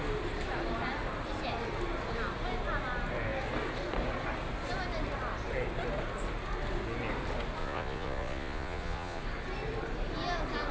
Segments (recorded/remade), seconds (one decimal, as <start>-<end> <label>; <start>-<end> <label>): 0.0-7.6 recorded; 7.6-9.2 remade; 9.2-10.7 recorded